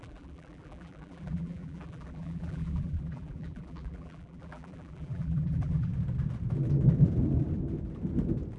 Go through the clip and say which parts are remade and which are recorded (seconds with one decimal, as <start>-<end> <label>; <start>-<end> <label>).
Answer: 0.0-5.9 remade; 5.9-8.6 recorded

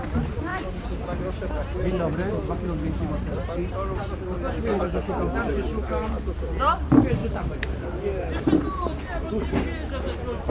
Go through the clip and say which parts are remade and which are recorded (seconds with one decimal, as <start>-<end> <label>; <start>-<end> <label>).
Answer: 0.0-7.2 recorded; 7.2-8.4 remade; 8.4-10.5 recorded